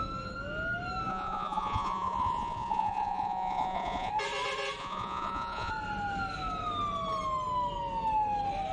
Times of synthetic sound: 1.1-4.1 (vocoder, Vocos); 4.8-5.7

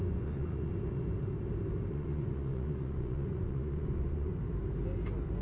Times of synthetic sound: 0.0-0.7 (vocoder, Vocos); 1.9-4.3

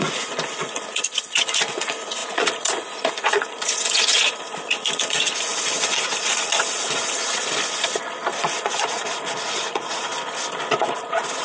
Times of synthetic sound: 0.0-7.3 (vocoder, Vocos); 8.4-10.1; 10.7-11.4

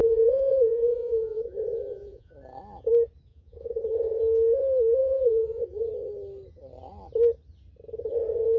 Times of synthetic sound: 0.0-2.3 (vocoder, Vocos); 3.3-4.2; 5.0-5.9